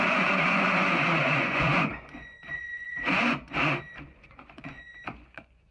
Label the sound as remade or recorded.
remade